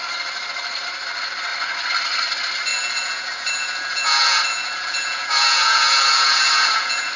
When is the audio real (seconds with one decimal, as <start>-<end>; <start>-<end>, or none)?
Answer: 0.0-2.7

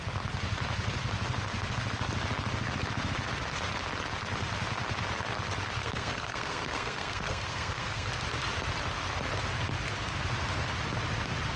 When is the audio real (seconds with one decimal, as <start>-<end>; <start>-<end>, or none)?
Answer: 0.0-5.8; 8.1-11.6

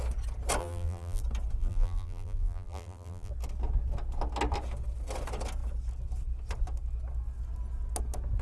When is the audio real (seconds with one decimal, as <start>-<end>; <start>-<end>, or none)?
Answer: 0.0-0.6; 1.2-1.6; 3.3-8.4